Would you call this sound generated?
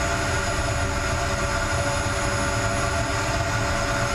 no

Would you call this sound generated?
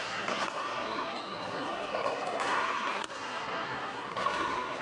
yes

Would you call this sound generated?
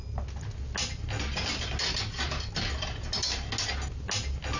no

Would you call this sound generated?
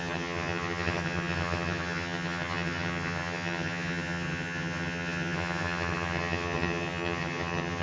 yes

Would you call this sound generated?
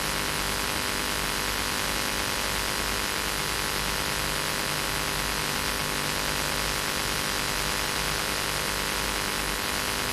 no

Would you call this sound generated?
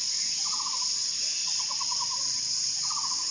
no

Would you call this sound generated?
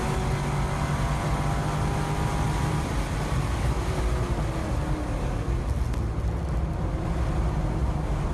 no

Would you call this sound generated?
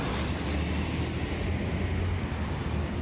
no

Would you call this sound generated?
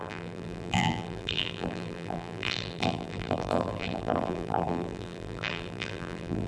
yes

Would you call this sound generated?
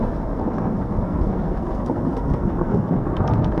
yes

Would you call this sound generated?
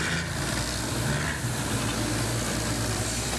yes